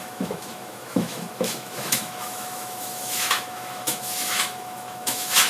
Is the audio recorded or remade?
remade